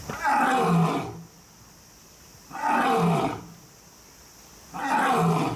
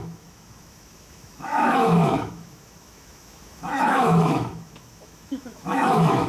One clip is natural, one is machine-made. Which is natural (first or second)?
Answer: first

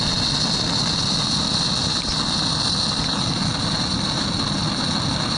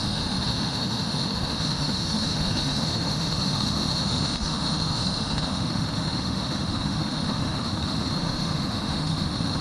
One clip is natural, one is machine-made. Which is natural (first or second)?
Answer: first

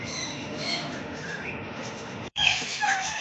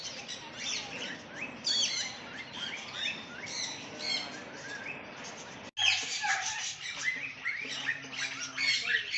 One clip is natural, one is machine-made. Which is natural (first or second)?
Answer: second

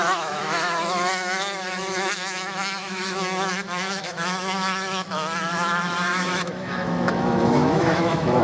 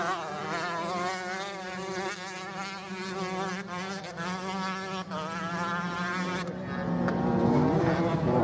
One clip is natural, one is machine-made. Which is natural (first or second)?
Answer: second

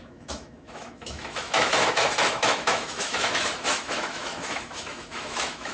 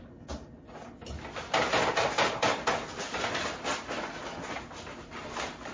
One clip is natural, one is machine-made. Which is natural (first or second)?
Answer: second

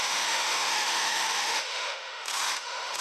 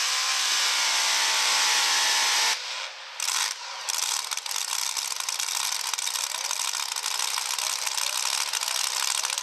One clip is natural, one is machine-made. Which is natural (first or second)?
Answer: second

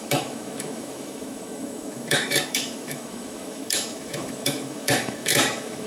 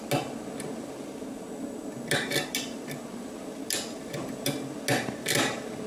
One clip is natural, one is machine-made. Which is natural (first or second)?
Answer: second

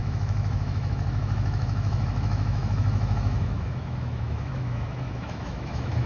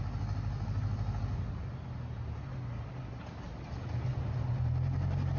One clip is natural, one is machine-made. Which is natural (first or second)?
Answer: second